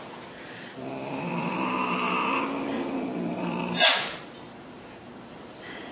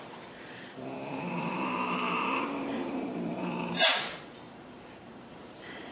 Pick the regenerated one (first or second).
second